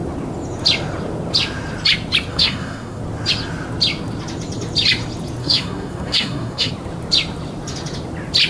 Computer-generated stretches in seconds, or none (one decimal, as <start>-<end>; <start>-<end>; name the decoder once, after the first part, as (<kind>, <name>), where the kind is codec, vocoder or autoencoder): 2.3-3.0 (codec, SNAC); 5.4-6.7